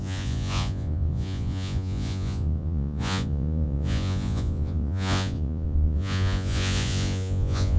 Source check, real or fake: fake